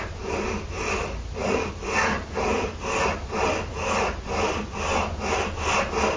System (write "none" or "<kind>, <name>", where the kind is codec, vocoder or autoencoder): none